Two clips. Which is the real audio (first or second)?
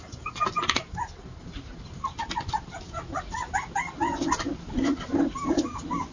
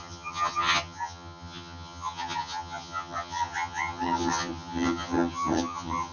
first